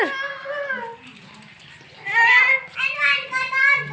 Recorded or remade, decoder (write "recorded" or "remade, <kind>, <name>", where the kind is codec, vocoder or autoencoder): recorded